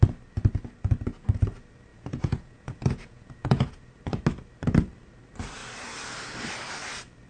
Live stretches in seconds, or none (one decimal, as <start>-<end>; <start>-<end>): 0.0-1.9; 3.9-7.3